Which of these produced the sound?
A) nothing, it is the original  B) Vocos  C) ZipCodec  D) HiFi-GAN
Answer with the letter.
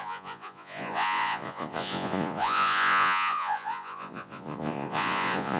B